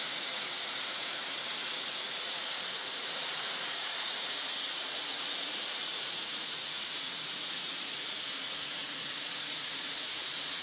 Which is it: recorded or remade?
remade